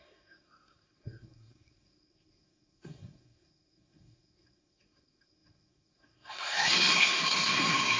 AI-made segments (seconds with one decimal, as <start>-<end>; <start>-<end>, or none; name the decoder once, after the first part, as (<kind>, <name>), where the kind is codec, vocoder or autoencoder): 0.0-8.0 (codec, SNAC)